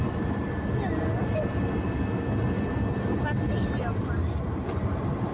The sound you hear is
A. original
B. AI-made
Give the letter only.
A